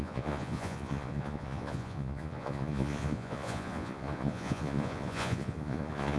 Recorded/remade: remade